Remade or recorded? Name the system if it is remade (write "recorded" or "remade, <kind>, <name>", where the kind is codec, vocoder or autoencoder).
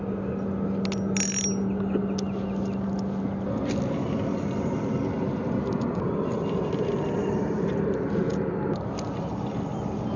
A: recorded